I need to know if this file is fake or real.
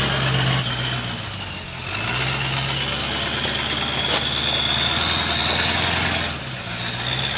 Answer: real